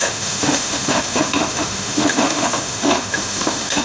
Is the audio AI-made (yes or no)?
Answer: yes